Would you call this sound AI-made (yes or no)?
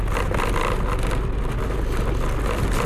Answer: no